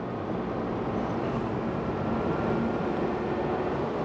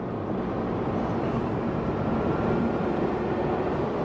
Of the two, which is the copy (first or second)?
second